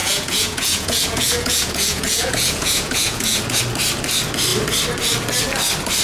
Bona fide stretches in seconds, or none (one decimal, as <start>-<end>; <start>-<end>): 3.6-6.0